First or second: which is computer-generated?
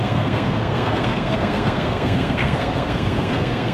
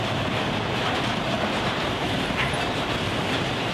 first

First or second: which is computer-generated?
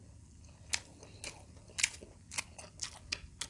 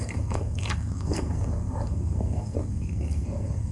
second